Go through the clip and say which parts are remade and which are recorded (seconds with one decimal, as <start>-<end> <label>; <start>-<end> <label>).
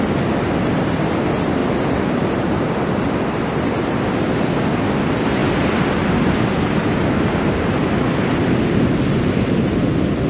0.0-1.6 recorded; 1.6-3.6 remade; 3.6-5.4 recorded; 5.4-9.8 remade; 9.8-10.3 recorded